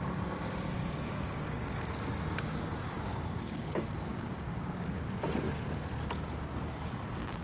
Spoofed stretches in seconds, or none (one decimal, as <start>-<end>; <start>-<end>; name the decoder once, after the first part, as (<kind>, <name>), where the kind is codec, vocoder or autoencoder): 0.8-2.0 (codec, DAC); 2.5-5.0